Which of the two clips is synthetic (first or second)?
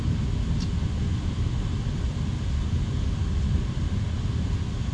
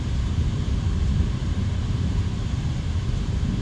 second